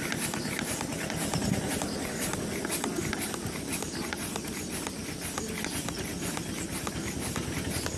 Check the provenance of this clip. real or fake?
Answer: real